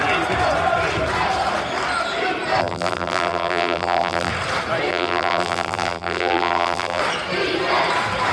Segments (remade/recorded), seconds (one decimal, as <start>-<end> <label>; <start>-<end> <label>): 0.0-2.6 recorded; 2.6-4.3 remade; 4.3-4.9 recorded; 4.9-7.0 remade; 7.0-8.3 recorded